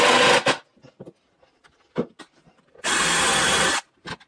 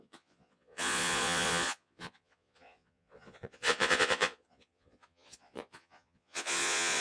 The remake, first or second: second